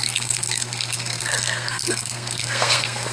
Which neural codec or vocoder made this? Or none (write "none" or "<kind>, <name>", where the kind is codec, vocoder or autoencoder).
codec, SNAC